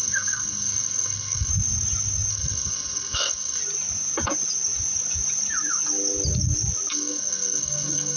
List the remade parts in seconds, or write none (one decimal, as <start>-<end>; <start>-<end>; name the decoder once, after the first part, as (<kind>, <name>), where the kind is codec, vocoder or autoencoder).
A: 0.0-1.5 (codec, SNAC); 2.3-3.6; 6.9-8.2